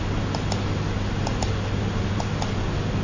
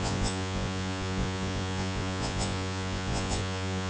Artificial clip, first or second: second